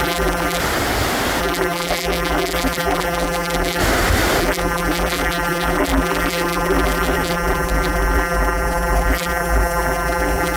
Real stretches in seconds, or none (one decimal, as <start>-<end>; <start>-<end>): 0.6-1.4; 3.8-4.4